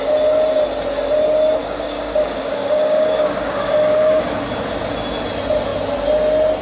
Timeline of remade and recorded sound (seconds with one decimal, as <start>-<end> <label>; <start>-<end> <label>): 0.0-1.6 recorded; 1.6-4.2 remade; 4.2-6.6 recorded